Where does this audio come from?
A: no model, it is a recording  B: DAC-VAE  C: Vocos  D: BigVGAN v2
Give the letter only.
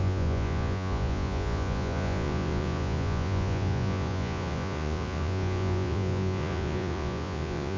C